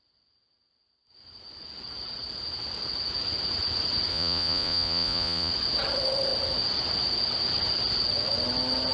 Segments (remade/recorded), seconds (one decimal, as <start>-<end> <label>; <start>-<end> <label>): 0.0-4.1 recorded; 4.1-5.5 remade; 5.5-8.9 recorded